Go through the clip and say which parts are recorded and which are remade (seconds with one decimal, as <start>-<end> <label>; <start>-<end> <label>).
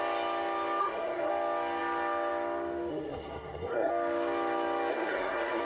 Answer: 0.0-0.8 recorded; 0.8-1.3 remade; 1.3-2.9 recorded; 2.9-3.9 remade; 3.9-4.9 recorded; 4.9-5.6 remade